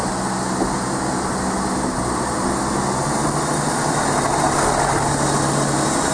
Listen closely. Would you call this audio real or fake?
real